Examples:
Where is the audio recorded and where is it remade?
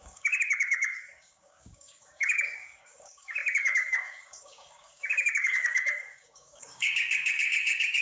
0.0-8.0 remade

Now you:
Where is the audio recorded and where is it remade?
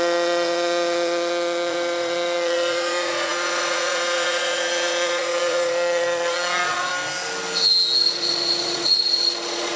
0.0-6.9 remade; 6.9-8.0 recorded; 8.0-9.8 remade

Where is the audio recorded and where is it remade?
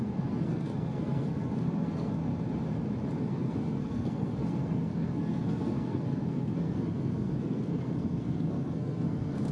0.0-2.3 remade; 2.3-3.2 recorded; 3.2-9.5 remade